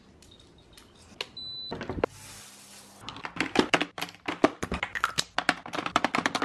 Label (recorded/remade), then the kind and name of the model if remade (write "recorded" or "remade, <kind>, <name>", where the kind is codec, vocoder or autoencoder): recorded